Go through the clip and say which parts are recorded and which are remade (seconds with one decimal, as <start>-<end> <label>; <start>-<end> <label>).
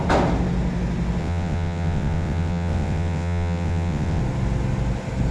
0.0-1.2 recorded; 1.2-4.2 remade; 4.2-5.3 recorded